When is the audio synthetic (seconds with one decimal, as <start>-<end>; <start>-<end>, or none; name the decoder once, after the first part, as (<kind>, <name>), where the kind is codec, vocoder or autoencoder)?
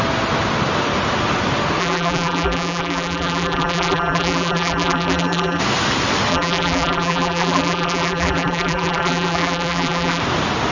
1.8-5.6 (vocoder, BigVGAN v2); 6.3-10.2